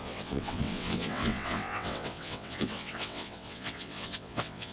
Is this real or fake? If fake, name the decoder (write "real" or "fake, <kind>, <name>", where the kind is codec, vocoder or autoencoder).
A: fake, vocoder, WaveNeXt